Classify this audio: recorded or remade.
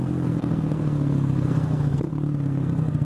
remade